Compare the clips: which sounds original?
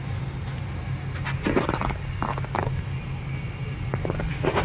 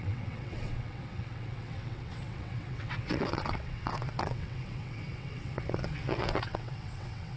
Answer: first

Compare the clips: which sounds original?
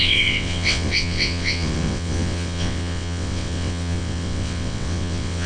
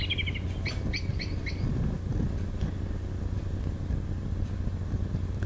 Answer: second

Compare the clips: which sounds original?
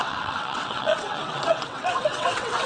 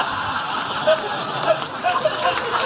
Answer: second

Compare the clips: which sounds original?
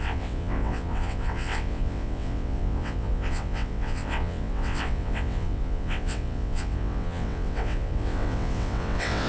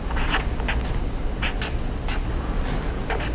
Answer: second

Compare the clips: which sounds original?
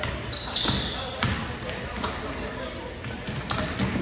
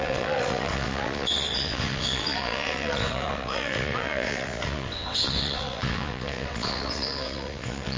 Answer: first